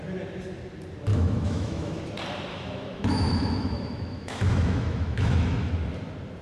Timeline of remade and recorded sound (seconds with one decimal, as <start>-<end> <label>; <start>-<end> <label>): 0.0-1.1 recorded; 1.1-2.0 remade; 2.0-2.5 recorded; 2.5-5.7 remade; 5.7-6.4 recorded